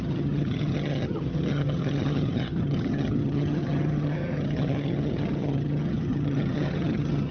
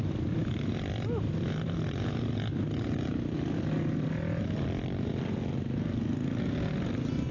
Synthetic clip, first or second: first